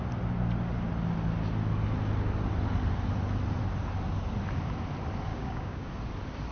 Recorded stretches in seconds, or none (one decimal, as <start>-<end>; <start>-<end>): 0.0-5.3; 5.9-6.5